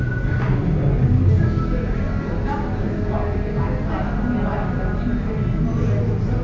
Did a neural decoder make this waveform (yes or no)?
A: no